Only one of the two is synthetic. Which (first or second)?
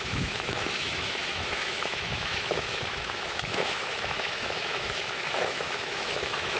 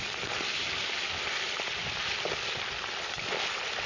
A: first